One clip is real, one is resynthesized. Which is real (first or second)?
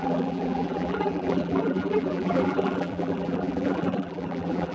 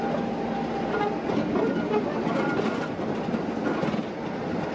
second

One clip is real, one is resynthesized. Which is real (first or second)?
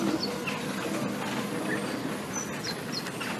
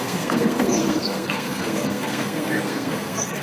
first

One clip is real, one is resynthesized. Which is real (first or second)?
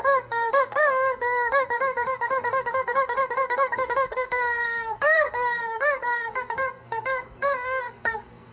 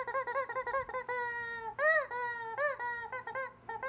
second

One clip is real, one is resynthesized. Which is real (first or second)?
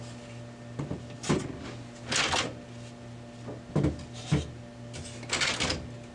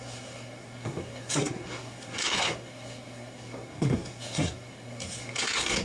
first